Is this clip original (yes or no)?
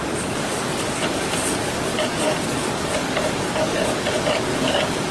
no